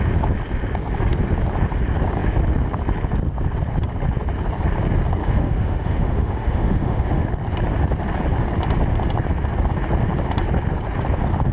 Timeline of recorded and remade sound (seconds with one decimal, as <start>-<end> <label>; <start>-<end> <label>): 0.0-5.2 recorded; 5.2-7.3 remade; 7.3-11.5 recorded